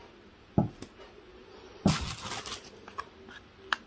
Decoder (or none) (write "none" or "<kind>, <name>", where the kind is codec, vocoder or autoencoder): none